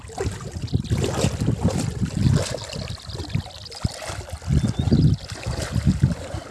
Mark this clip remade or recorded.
recorded